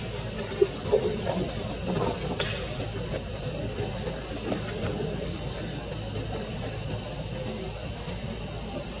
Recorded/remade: recorded